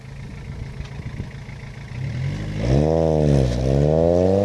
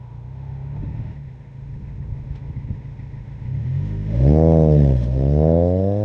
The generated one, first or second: second